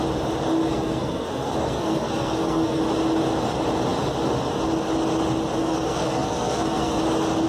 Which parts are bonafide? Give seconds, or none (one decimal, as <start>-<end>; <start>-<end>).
0.0-0.6; 2.8-5.6; 7.0-7.5